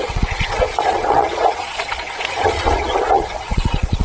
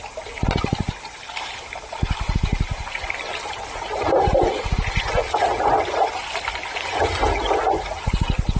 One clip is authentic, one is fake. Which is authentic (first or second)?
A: second